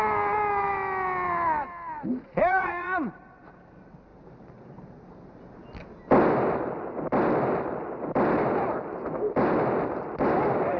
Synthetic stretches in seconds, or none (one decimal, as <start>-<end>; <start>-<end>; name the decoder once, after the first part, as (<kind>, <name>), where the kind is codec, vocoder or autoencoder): 2.1-3.2 (vocoder, Vocos)